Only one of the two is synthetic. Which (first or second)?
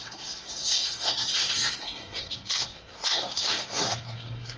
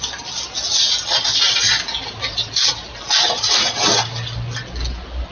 first